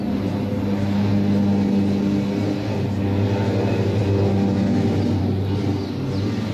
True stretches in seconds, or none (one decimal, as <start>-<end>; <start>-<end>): 0.0-6.5